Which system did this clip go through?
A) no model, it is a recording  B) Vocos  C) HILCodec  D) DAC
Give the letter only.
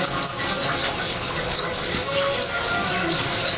D